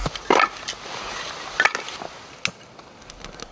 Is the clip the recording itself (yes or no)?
yes